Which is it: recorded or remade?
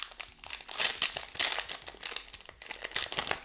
recorded